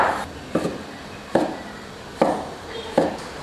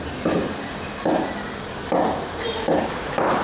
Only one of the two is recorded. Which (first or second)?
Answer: second